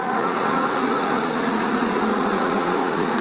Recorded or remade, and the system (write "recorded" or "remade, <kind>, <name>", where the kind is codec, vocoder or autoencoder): remade, vocoder, Vocos